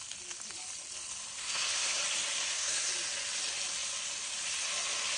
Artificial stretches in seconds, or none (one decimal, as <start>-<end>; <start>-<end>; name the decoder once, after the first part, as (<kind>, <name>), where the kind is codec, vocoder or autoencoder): 1.4-2.0 (codec, SNAC); 2.4-2.9